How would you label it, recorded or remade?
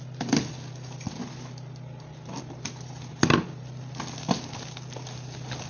recorded